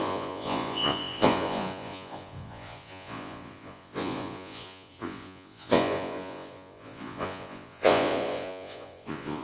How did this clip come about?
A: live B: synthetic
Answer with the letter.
B